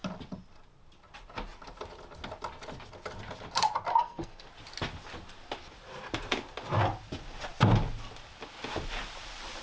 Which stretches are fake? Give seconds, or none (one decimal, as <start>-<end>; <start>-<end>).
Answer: 3.9-4.5